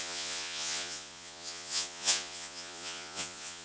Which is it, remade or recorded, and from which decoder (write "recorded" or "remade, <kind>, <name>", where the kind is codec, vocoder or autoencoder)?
remade, vocoder, Vocos